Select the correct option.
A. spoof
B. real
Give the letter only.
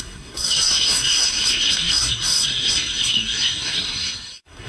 A